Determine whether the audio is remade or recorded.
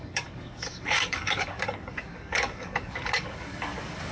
remade